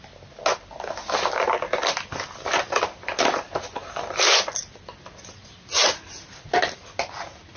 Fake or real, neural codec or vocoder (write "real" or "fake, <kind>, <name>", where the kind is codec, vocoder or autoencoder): real